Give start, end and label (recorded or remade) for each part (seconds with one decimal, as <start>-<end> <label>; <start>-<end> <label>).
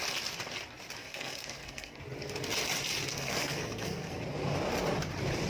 0.0-1.0 recorded; 1.0-2.0 remade; 2.0-3.1 recorded; 3.1-4.2 remade; 4.2-5.5 recorded